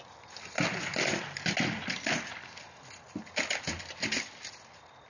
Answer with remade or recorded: recorded